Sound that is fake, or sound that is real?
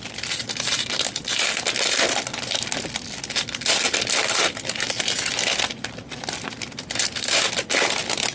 real